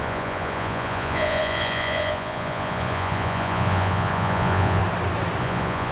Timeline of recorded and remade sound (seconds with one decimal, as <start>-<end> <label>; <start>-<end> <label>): 0.0-4.8 remade; 4.8-5.4 recorded; 5.4-5.9 remade